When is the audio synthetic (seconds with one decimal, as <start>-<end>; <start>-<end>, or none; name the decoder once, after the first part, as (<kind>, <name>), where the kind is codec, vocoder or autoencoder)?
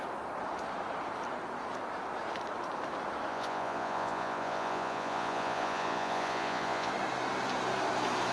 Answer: 3.3-6.9 (vocoder, Vocos)